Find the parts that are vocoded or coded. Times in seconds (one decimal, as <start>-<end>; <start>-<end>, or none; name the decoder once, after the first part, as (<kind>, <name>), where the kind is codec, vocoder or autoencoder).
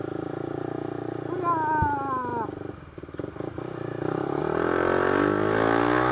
none